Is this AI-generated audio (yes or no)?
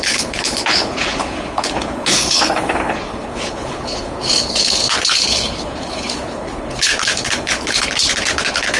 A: yes